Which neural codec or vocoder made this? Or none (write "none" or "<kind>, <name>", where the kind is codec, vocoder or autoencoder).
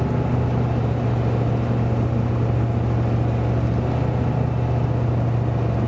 none